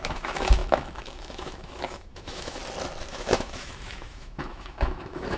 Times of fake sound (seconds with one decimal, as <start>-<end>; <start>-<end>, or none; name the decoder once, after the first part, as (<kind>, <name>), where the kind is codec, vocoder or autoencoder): 0.0-2.6 (autoencoder, DAC-VAE); 3.1-5.4